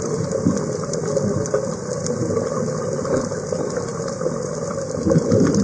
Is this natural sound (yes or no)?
yes